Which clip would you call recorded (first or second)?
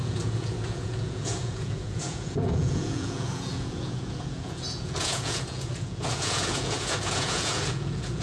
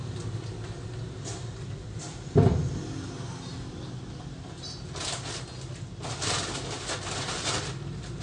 second